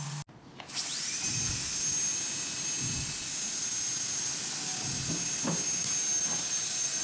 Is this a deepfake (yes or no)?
no